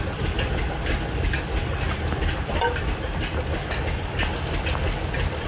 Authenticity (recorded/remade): recorded